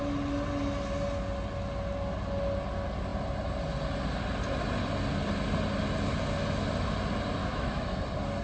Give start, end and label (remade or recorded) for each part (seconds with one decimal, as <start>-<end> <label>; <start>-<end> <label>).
0.0-7.4 recorded; 7.4-8.0 remade; 8.0-8.4 recorded